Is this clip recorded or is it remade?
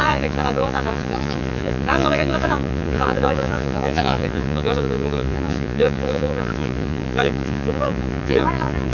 remade